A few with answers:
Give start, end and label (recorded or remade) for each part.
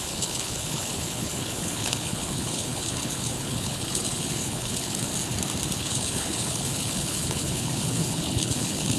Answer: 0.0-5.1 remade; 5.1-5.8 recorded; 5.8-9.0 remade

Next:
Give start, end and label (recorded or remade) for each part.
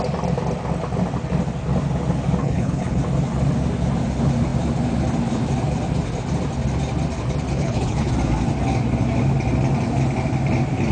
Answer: 0.0-2.4 recorded; 2.4-3.0 remade; 3.0-7.6 recorded; 7.6-8.1 remade; 8.1-10.9 recorded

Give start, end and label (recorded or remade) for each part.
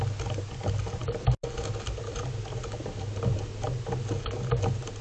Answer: 0.0-5.0 recorded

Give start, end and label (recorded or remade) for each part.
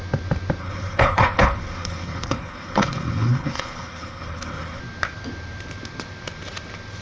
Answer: 0.0-0.6 recorded; 0.6-4.8 remade; 4.8-7.0 recorded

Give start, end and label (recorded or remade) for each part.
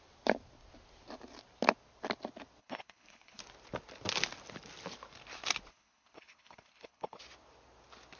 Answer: 0.0-2.6 recorded; 2.6-3.4 remade; 3.4-5.7 recorded; 5.7-7.2 remade; 7.2-8.2 recorded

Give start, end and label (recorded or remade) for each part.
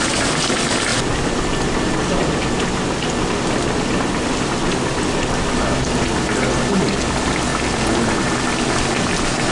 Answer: 0.0-9.5 recorded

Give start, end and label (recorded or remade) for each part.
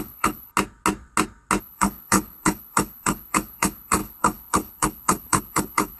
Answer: 0.0-0.5 remade; 0.5-1.6 recorded; 1.6-6.0 remade